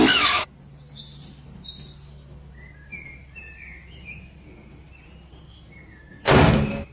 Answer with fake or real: real